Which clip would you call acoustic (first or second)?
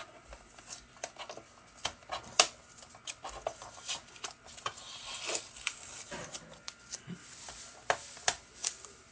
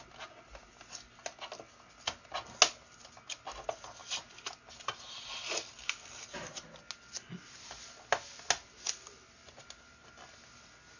second